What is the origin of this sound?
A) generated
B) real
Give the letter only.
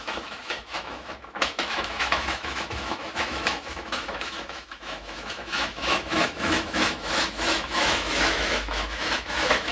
A